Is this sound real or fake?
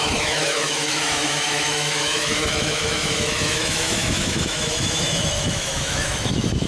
fake